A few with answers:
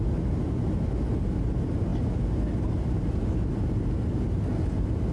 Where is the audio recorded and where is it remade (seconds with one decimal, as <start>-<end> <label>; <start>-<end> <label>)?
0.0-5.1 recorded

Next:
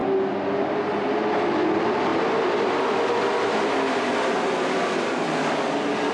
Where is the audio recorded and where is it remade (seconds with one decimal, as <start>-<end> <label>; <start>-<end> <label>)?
0.0-6.1 recorded

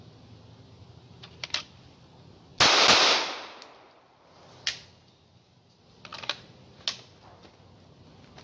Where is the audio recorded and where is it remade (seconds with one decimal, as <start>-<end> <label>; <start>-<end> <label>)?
0.0-8.4 recorded

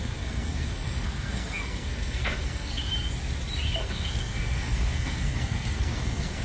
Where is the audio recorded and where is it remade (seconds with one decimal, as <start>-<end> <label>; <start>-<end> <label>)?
0.0-2.8 remade; 2.8-3.8 recorded; 3.8-6.4 remade

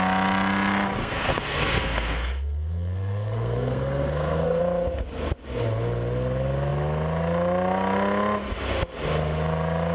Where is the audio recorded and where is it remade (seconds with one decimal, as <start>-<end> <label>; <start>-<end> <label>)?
0.0-1.0 recorded; 1.0-4.6 remade; 4.6-9.9 recorded

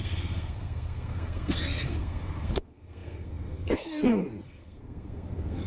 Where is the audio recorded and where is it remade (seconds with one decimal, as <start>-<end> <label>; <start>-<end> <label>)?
0.0-5.7 remade

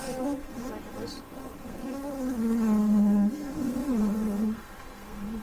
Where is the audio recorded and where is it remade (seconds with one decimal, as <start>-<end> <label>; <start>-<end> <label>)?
0.0-0.6 remade; 0.6-1.2 recorded; 1.2-2.1 remade; 2.1-2.8 recorded; 2.8-5.4 remade

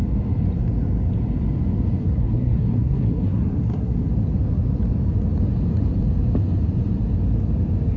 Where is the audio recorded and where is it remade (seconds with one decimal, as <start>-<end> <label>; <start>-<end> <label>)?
0.0-2.0 recorded; 2.0-4.1 remade; 4.1-8.0 recorded